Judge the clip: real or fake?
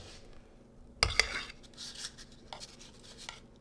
real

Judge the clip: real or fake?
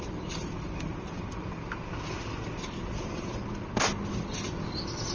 real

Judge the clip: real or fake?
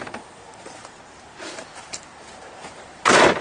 fake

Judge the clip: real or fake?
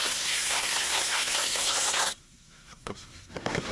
fake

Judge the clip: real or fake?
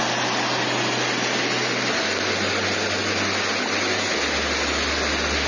real